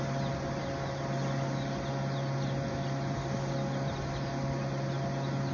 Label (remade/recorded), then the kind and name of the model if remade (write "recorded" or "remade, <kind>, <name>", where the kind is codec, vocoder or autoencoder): recorded